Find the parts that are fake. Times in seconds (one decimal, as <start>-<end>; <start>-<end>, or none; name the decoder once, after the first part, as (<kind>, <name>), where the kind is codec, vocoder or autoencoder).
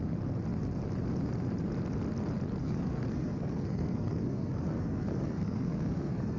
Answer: 2.6-6.4 (codec, SNAC)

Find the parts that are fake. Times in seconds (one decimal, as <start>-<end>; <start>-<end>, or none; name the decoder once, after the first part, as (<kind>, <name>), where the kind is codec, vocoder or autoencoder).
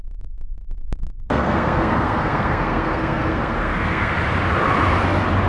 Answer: 1.0-4.1 (codec, SNAC)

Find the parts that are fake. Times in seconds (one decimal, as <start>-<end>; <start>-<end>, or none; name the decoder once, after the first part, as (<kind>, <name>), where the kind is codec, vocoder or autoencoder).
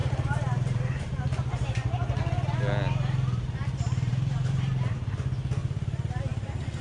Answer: 0.0-2.2 (vocoder, BigVGAN v2); 4.1-4.7; 5.6-6.2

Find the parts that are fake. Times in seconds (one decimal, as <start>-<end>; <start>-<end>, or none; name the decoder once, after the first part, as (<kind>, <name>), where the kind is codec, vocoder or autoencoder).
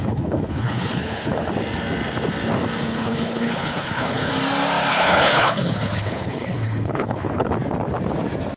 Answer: 0.0-1.5 (codec, HILCodec); 2.9-4.3; 4.9-7.5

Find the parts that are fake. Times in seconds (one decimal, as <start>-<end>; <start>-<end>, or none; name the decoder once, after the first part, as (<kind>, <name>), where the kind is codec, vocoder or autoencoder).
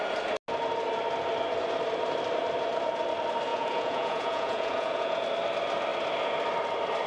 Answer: 3.5-5.2 (vocoder, Vocos)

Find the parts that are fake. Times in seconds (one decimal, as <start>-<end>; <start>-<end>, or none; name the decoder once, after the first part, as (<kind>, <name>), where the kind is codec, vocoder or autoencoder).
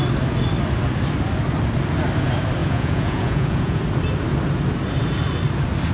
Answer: 2.6-3.8 (vocoder, Vocos)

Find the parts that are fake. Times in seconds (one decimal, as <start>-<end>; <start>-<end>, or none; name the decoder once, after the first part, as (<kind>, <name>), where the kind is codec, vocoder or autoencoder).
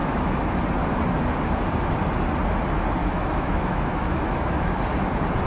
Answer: 0.0-0.6 (autoencoder, DAC-VAE); 3.0-4.8